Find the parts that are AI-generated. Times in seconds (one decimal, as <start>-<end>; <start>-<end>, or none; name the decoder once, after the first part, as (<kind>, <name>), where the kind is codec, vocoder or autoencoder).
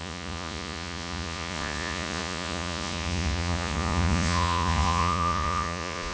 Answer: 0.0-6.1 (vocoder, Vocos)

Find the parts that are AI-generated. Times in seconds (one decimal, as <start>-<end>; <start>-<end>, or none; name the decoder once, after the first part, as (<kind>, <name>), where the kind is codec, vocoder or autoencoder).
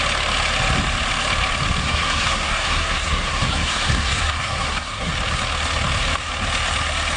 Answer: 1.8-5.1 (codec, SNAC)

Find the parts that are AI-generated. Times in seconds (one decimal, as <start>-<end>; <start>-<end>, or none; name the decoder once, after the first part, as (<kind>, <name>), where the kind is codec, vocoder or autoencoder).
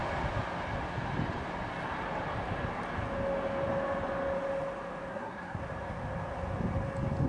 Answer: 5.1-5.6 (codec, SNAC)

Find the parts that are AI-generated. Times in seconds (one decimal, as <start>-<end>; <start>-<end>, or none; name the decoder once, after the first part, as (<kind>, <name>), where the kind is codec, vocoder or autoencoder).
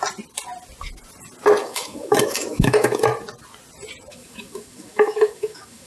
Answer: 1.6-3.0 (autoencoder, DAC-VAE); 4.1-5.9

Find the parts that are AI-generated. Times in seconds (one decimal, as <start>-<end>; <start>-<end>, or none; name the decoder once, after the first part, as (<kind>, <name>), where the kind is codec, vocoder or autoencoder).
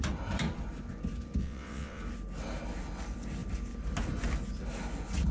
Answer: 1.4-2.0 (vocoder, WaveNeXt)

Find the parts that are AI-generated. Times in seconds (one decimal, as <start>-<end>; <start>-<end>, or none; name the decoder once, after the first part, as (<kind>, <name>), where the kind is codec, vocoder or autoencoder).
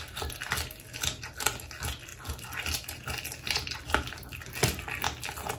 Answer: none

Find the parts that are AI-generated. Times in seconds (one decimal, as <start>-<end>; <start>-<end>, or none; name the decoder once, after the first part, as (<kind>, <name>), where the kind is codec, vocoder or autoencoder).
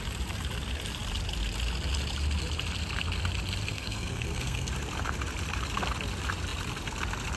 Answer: 3.7-4.7 (codec, SNAC)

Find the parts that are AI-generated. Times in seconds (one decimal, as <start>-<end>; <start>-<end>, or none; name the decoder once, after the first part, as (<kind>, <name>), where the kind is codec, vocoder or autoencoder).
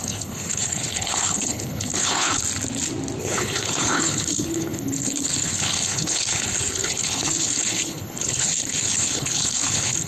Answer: 0.0-2.4 (codec, HILCodec); 3.2-10.1